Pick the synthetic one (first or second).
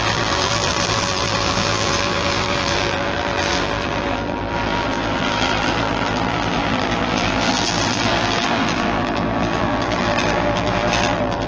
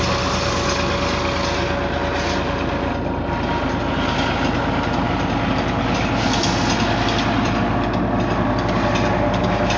first